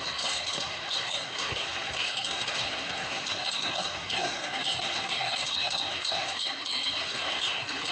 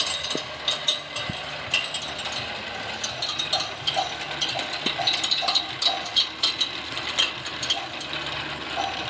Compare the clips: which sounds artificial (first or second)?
first